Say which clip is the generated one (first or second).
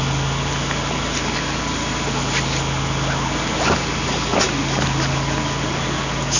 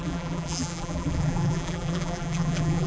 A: second